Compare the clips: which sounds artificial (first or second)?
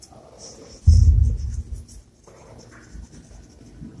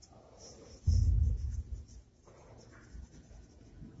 second